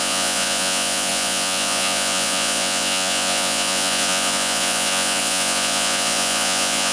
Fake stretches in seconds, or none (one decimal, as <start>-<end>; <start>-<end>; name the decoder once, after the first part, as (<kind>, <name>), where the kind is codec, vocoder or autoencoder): 0.0-6.9 (vocoder, Vocos)